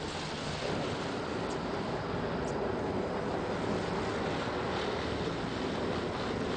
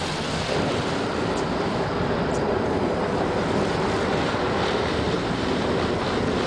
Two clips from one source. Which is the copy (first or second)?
second